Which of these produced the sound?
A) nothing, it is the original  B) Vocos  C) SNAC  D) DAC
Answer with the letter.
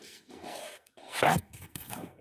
C